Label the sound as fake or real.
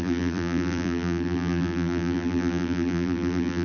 fake